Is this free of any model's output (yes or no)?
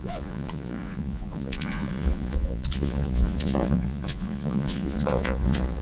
no